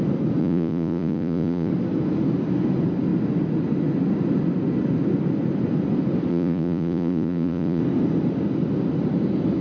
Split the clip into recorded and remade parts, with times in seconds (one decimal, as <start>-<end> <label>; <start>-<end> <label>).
0.0-0.4 recorded; 0.4-1.7 remade; 1.7-6.3 recorded; 6.3-7.8 remade; 7.8-9.6 recorded